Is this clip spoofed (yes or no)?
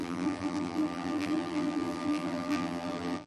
yes